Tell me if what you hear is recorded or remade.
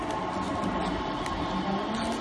recorded